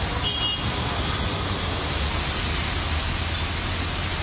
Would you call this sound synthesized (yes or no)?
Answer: no